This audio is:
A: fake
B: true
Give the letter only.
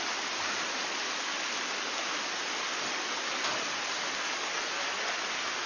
B